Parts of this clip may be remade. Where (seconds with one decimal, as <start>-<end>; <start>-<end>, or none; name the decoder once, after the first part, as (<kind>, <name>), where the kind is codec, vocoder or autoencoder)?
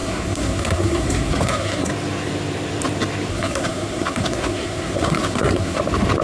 0.0-1.9 (codec, SNAC); 3.3-5.8